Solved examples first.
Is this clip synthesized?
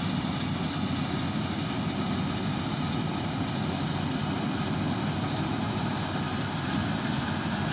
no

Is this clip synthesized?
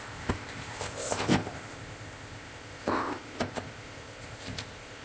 yes